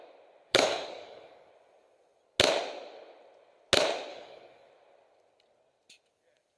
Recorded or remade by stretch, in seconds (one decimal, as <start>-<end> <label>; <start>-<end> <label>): 0.0-0.5 recorded; 0.5-1.5 remade; 1.5-4.1 recorded; 4.1-4.7 remade; 4.7-6.6 recorded